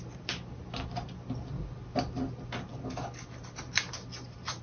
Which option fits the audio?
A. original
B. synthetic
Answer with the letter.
A